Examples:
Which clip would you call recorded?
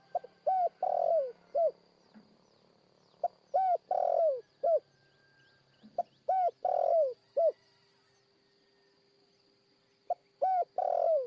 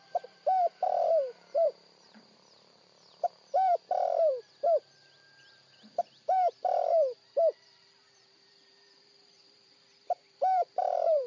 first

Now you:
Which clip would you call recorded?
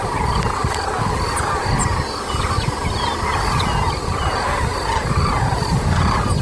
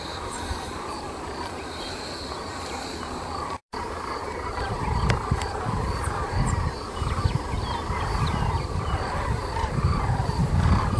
first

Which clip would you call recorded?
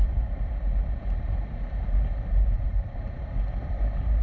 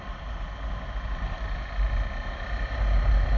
second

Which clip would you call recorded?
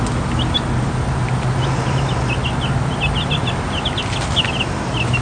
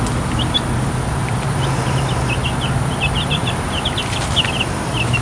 first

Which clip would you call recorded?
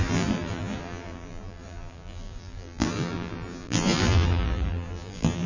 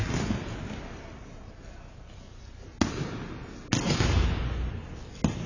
second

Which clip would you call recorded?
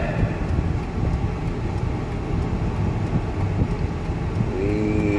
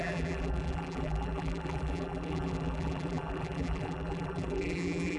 first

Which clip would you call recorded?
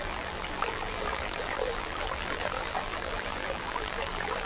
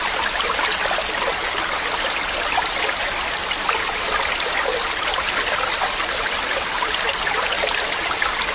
second